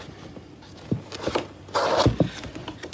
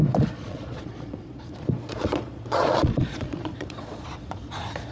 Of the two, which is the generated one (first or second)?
second